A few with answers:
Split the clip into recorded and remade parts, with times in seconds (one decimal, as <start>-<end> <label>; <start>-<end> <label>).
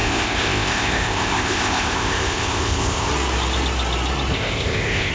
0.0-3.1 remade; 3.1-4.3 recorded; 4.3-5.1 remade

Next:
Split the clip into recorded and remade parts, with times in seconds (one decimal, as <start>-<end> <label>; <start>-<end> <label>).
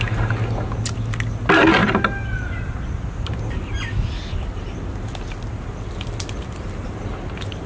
0.0-7.7 recorded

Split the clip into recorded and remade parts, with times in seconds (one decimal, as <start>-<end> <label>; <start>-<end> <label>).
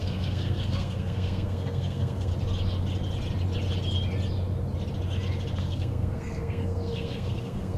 0.0-2.3 remade; 2.3-5.6 recorded; 5.6-7.8 remade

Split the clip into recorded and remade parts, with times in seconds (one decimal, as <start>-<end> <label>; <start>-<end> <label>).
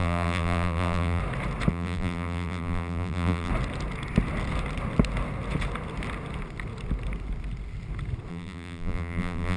0.0-1.2 remade; 1.2-1.7 recorded; 1.7-3.5 remade; 3.5-8.3 recorded; 8.3-9.6 remade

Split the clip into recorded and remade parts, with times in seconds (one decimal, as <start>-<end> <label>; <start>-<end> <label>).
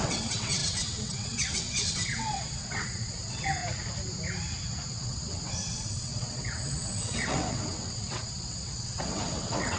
0.0-3.6 remade; 3.6-4.9 recorded; 4.9-9.8 remade